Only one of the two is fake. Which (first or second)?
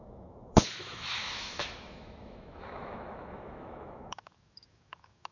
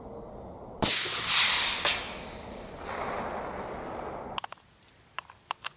first